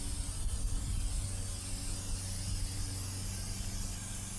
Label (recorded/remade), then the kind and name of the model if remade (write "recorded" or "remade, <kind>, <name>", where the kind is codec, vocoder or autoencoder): recorded